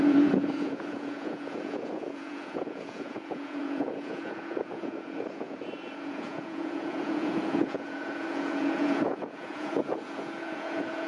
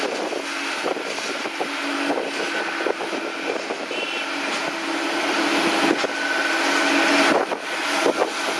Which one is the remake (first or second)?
first